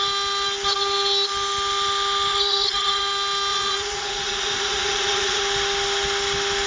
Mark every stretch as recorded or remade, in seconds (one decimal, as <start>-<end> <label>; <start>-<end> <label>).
0.0-2.3 recorded; 2.3-3.0 remade; 3.0-3.5 recorded; 3.5-5.4 remade; 5.4-6.7 recorded